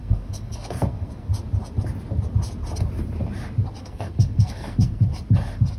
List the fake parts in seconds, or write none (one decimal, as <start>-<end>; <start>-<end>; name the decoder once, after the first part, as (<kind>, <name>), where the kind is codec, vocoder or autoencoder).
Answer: 0.0-1.3 (codec, SNAC); 3.8-5.1